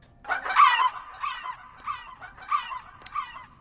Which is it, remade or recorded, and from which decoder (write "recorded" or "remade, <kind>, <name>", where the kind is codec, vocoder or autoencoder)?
recorded